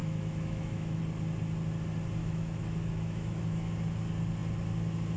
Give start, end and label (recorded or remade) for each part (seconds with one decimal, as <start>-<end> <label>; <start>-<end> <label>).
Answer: 0.0-1.0 remade; 1.0-2.2 recorded; 2.2-3.7 remade; 3.7-5.2 recorded